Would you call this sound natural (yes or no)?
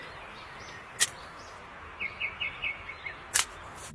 no